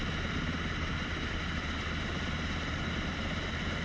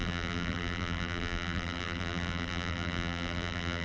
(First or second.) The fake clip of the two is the second